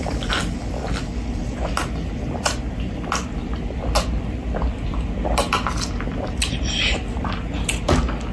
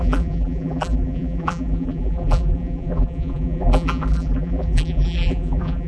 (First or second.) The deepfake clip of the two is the second